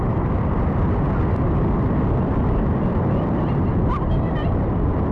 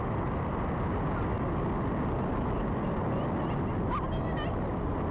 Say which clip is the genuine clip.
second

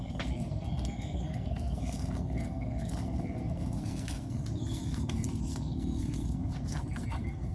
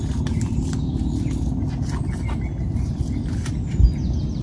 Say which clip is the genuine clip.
second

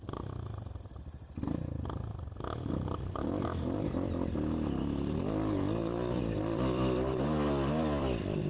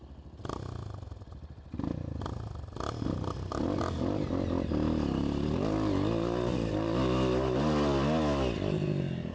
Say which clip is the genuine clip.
second